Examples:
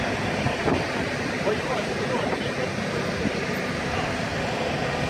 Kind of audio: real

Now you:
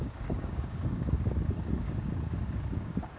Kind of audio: fake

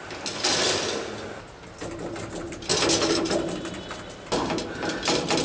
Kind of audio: real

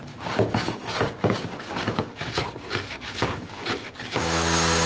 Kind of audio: fake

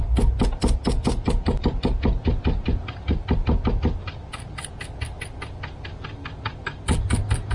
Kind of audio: real